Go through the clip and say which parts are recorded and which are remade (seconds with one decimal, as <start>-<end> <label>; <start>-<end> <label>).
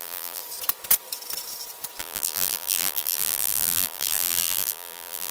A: 0.0-0.4 remade; 0.4-2.0 recorded; 2.0-5.3 remade